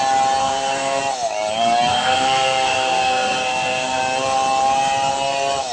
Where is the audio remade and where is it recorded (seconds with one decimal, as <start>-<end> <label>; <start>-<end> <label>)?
0.0-0.4 recorded; 0.4-1.0 remade; 1.0-1.9 recorded; 1.9-4.0 remade; 4.0-5.7 recorded